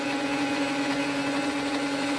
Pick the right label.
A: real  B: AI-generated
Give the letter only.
B